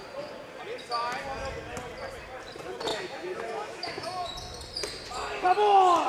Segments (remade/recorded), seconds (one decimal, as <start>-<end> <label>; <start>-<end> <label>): 0.0-2.9 recorded; 2.9-4.3 remade; 4.3-6.1 recorded